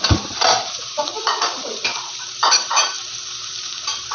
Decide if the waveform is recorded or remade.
remade